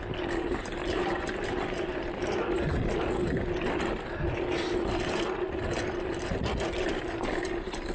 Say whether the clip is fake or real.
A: real